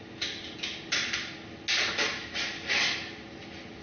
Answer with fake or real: real